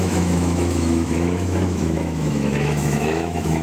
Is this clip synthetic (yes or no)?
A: yes